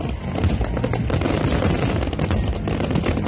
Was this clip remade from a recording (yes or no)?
no